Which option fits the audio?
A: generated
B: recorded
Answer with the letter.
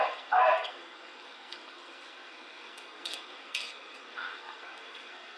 A